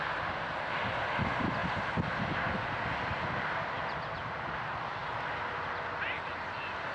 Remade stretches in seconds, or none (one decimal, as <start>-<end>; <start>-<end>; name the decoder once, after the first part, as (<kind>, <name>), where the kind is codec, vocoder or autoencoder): none